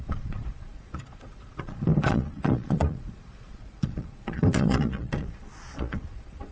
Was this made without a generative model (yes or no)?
no